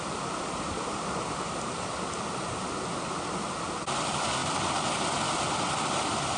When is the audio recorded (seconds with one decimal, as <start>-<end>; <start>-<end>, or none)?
0.0-6.4